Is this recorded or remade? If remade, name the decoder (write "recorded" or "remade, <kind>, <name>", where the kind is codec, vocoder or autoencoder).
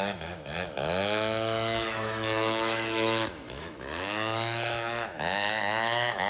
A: remade, autoencoder, DAC-VAE